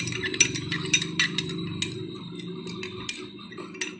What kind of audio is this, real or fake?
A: real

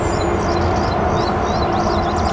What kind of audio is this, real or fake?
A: real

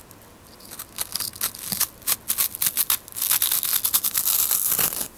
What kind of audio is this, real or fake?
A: real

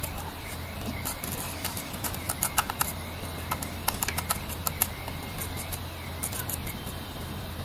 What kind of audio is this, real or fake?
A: fake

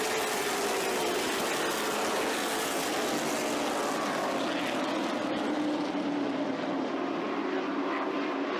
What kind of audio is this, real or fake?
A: real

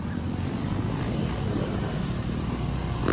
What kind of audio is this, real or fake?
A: real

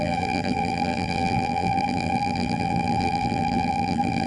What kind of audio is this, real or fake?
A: fake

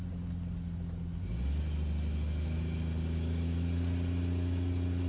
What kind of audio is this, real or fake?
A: real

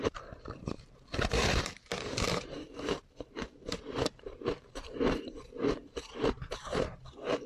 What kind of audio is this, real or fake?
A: fake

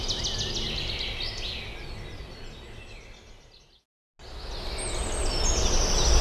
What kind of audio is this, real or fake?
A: real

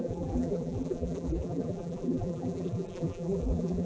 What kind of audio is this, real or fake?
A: fake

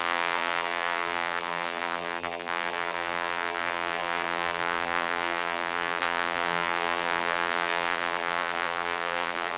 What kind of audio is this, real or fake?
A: fake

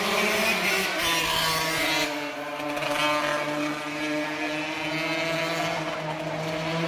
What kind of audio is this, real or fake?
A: real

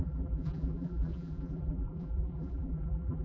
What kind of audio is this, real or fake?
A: fake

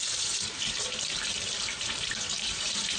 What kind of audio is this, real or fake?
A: fake